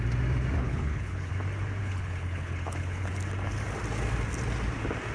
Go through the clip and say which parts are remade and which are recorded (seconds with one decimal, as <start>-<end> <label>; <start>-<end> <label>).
0.0-0.6 recorded; 0.6-1.3 remade; 1.3-1.8 recorded; 1.8-3.1 remade; 3.1-5.1 recorded